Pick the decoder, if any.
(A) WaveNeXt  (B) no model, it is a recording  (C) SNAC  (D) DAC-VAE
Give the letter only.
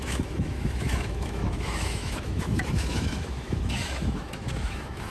D